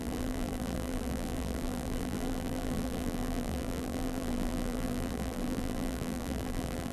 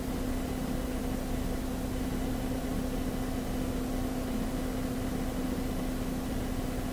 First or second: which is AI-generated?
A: first